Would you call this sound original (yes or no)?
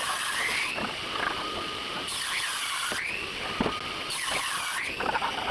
yes